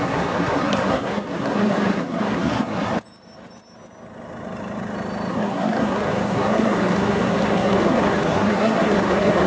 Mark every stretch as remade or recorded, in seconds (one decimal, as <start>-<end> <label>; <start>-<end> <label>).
0.0-2.9 remade; 2.9-5.3 recorded; 5.3-9.5 remade